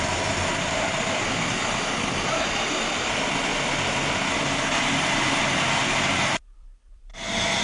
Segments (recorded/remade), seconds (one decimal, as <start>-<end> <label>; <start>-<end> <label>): 0.0-3.5 remade; 3.5-4.9 recorded; 4.9-7.1 remade; 7.1-7.6 recorded